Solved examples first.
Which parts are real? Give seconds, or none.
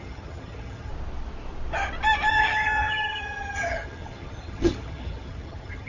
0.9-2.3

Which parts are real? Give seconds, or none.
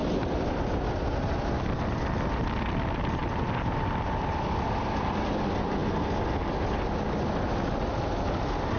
0.0-8.8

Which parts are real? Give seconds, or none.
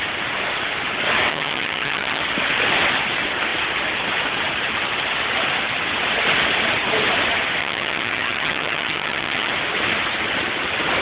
0.0-1.3; 2.2-7.6; 9.5-11.0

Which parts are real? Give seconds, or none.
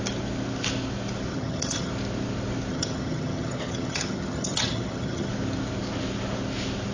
0.0-1.3; 1.9-2.7; 5.3-6.9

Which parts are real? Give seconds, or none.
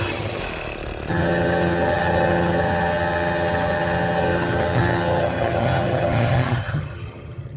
0.4-1.1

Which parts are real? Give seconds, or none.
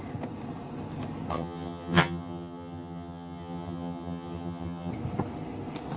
0.0-1.3; 4.9-6.0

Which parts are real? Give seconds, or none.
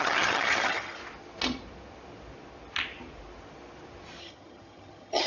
1.0-4.2